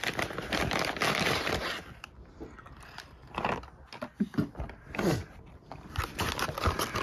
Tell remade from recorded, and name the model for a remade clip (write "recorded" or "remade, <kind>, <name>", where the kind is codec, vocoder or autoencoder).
recorded